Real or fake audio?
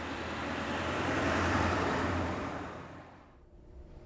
fake